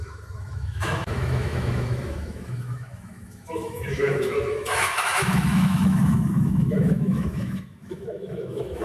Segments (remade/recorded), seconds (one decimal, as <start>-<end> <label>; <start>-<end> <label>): 0.0-8.8 remade

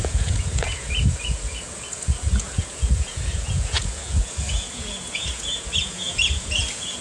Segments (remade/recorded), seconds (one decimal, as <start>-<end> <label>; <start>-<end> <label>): 0.0-7.0 remade

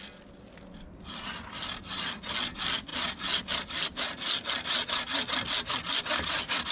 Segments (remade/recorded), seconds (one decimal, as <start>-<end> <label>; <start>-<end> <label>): 0.0-6.7 recorded